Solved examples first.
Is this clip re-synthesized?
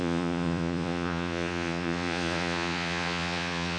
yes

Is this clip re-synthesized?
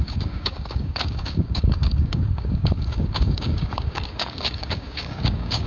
yes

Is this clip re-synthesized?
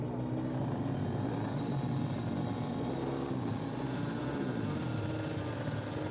no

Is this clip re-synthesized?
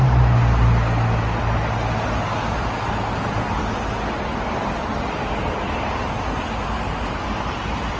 no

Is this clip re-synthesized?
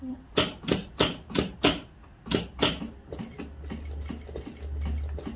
no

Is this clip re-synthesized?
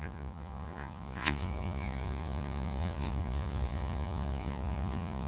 yes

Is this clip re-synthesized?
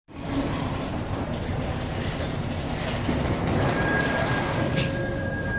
yes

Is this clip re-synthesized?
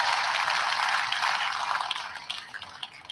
no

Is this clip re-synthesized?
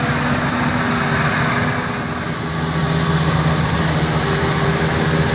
no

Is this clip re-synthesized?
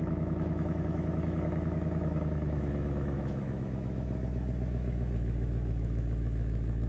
yes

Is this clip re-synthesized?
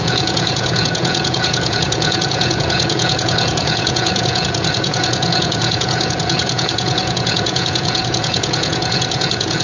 yes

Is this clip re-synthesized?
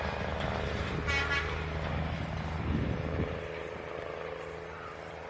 no